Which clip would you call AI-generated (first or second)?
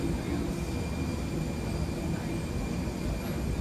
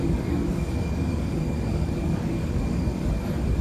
second